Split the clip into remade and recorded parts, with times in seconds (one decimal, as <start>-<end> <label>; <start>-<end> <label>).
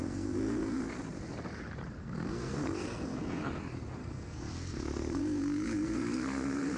0.0-0.8 remade; 0.8-2.0 recorded; 2.0-3.5 remade; 3.5-4.0 recorded; 4.0-6.8 remade